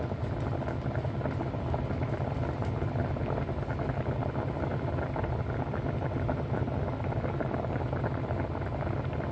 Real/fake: real